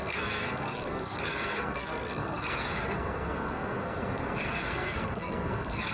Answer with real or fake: fake